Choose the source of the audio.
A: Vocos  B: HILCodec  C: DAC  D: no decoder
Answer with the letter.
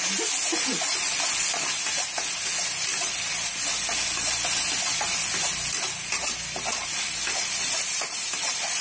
D